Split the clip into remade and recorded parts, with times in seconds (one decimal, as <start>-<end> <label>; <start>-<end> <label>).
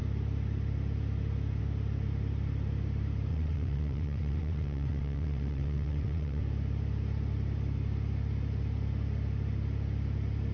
0.0-3.3 recorded; 3.3-6.4 remade; 6.4-10.5 recorded